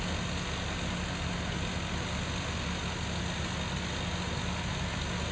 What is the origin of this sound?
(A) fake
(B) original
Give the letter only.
B